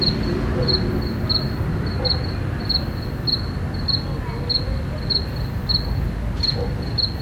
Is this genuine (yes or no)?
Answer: yes